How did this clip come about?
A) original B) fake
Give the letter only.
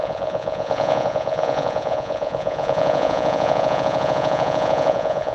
B